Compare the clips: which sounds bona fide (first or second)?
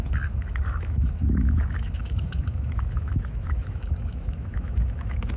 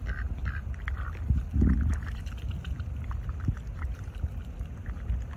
second